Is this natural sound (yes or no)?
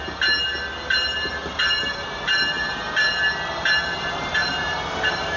yes